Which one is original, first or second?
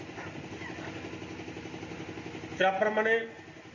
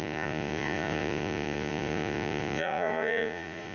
first